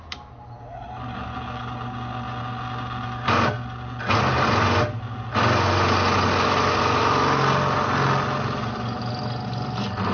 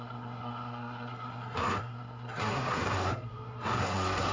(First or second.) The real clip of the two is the first